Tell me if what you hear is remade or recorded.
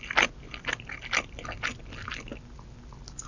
recorded